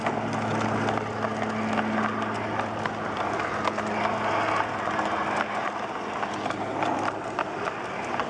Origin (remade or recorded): recorded